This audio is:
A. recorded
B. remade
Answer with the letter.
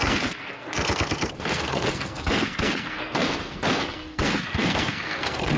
B